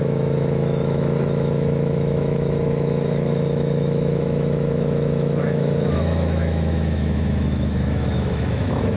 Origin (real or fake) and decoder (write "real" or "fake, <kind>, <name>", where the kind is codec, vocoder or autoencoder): fake, autoencoder, DAC-VAE